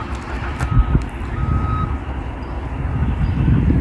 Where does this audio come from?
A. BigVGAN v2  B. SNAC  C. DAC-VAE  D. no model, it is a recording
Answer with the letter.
D